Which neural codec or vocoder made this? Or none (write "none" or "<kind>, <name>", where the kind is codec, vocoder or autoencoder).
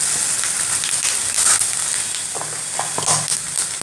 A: none